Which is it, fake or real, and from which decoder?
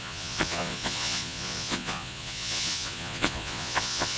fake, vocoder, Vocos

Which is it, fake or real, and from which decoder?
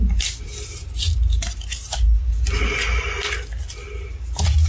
real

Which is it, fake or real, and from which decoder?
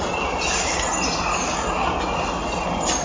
real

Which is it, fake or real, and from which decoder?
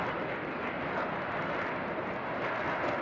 real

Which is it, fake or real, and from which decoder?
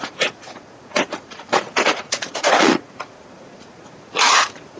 fake, vocoder, Vocos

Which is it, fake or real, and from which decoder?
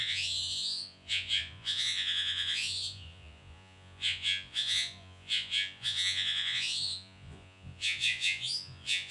fake, vocoder, Vocos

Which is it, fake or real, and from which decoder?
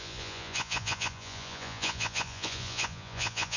fake, vocoder, Vocos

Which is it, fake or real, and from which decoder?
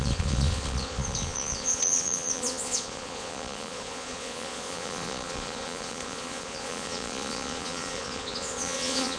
fake, vocoder, Vocos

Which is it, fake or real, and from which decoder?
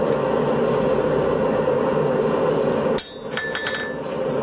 real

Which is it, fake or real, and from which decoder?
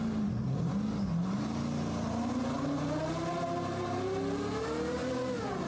real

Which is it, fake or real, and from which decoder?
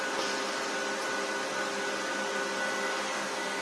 real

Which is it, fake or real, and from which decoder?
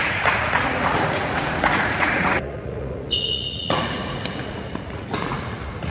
fake, vocoder, Vocos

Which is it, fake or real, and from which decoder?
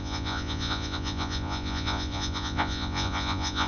fake, vocoder, Vocos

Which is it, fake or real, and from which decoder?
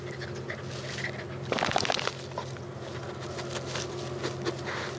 real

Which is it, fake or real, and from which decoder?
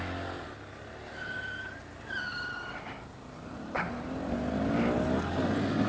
real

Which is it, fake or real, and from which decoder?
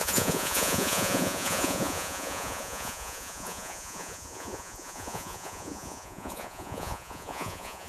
fake, vocoder, Vocos